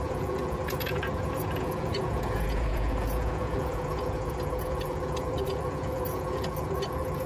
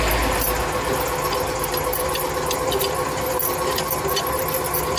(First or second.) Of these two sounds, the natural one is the second